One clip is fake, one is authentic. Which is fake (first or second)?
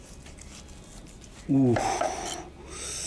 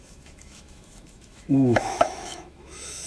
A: second